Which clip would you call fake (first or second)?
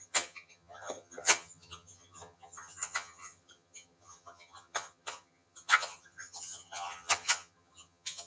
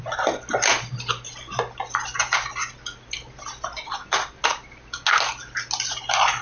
first